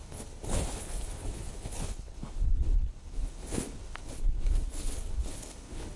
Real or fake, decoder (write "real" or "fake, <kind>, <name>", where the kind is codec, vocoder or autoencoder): fake, codec, HILCodec